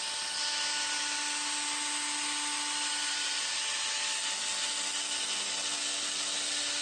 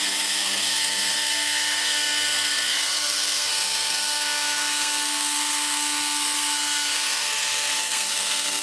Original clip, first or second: first